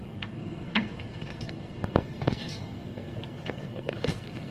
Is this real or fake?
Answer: fake